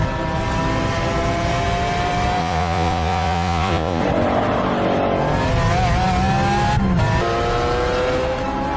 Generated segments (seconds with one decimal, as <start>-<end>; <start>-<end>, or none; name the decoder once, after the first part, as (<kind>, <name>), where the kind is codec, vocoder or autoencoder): 2.4-4.0 (vocoder, Vocos)